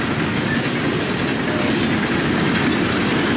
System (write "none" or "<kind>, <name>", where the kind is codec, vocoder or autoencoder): none